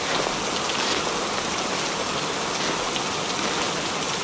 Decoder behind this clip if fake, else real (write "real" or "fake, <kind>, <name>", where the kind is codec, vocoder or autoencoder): real